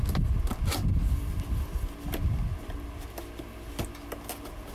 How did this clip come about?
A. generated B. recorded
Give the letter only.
B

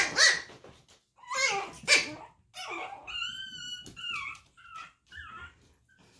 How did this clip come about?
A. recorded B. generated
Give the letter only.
A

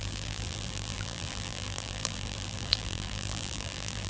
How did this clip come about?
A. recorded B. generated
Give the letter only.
B